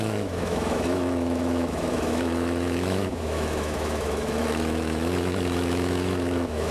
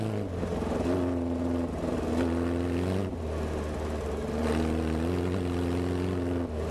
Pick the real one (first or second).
second